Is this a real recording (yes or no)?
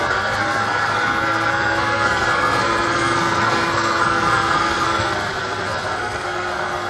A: no